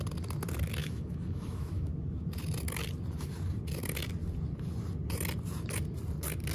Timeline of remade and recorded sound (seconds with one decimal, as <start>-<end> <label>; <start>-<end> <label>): 0.0-0.8 recorded; 0.8-1.9 remade; 1.9-6.5 recorded